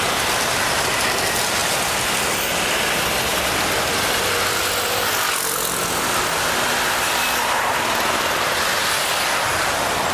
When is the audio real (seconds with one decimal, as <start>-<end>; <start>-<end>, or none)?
0.0-10.1